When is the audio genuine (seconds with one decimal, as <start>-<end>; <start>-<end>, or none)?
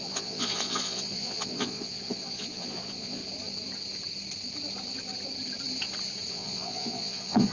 3.2-6.3